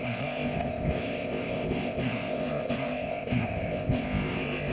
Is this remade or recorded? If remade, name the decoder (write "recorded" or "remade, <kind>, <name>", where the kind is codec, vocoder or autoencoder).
remade, codec, ZipCodec